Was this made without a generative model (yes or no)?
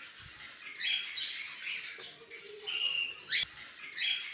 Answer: yes